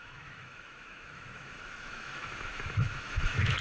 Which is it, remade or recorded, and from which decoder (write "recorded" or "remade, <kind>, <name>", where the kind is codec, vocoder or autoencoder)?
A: remade, autoencoder, DAC-VAE